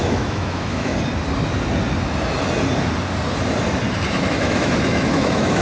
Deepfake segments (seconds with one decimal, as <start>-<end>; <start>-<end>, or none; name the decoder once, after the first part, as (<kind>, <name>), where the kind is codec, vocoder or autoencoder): 0.0-0.9 (autoencoder, DAC-VAE); 4.3-5.6